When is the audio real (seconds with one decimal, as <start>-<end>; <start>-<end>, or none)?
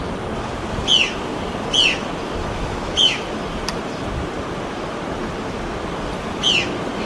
0.0-2.4; 3.1-7.1